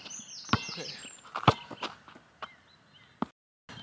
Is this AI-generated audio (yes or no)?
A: no